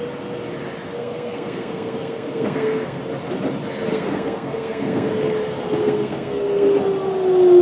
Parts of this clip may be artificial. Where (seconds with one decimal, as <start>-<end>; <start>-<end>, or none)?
0.9-3.0; 3.9-5.1; 5.8-6.8